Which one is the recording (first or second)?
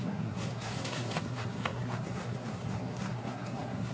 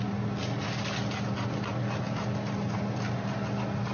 second